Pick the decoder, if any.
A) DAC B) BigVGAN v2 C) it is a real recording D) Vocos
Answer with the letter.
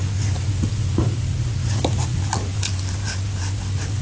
C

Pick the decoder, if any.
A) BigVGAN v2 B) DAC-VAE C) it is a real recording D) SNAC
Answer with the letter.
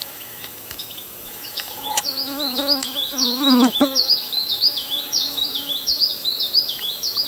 B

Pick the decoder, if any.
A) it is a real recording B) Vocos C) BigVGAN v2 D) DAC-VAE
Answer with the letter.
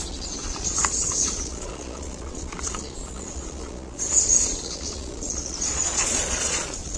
B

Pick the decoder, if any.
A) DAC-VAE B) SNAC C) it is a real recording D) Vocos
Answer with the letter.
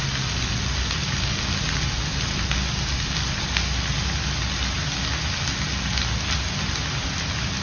C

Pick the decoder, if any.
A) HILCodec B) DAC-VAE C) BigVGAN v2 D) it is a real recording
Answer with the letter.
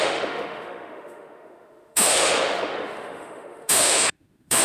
B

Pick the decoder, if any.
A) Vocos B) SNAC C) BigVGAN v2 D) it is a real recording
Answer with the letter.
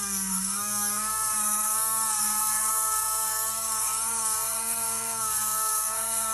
B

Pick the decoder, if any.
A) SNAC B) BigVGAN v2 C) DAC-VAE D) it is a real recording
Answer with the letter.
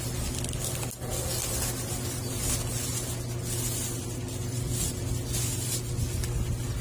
D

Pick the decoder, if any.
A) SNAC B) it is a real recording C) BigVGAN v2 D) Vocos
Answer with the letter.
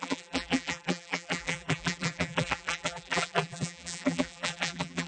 C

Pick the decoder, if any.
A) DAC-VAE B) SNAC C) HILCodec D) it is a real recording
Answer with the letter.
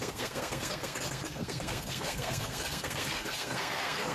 B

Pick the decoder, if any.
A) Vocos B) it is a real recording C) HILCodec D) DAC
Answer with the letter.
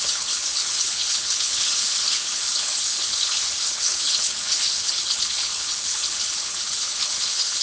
C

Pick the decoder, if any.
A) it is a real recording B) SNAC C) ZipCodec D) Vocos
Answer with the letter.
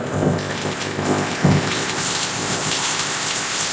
C